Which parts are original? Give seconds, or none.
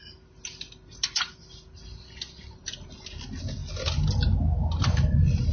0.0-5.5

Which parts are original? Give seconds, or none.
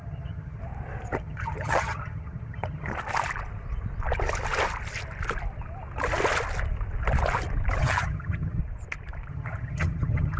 0.6-1.2; 2.9-7.8; 8.6-9.3